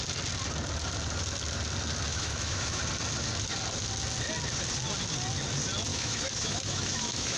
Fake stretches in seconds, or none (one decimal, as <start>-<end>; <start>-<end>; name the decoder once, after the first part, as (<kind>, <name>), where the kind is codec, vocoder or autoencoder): 2.1-2.8 (autoencoder, DAC-VAE); 5.9-7.4